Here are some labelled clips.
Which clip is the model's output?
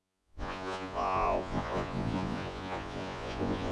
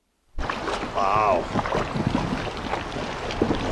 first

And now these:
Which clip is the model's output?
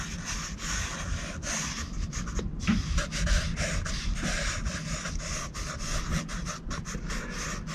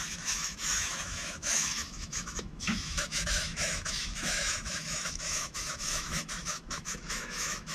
second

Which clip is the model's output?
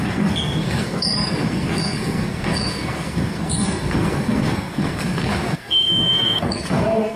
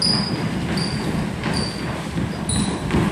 first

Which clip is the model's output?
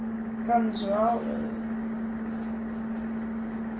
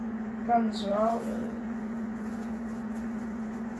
second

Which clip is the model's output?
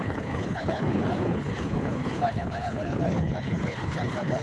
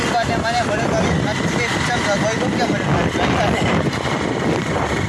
first